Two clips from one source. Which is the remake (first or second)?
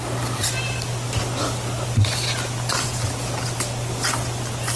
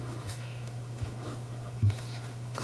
second